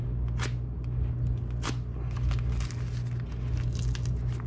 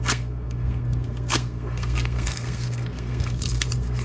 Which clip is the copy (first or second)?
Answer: second